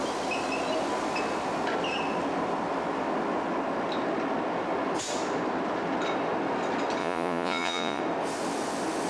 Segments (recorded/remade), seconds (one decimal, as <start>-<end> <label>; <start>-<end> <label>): 0.0-7.0 recorded; 7.0-8.0 remade; 8.0-9.1 recorded